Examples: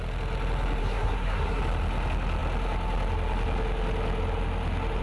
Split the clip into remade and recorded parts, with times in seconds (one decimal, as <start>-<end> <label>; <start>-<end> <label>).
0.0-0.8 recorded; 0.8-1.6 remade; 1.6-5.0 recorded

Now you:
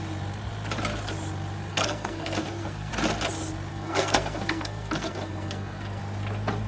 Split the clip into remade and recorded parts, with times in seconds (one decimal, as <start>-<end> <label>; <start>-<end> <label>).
0.0-1.7 recorded; 1.7-2.9 remade; 2.9-3.7 recorded; 3.7-6.0 remade; 6.0-6.7 recorded

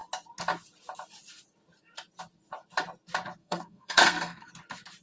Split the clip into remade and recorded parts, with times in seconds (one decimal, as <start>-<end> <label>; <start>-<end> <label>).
0.0-3.4 recorded; 3.4-4.5 remade; 4.5-5.0 recorded

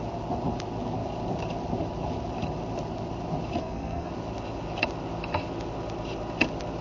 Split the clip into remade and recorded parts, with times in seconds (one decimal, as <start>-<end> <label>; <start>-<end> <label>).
0.0-3.6 recorded; 3.6-4.1 remade; 4.1-6.8 recorded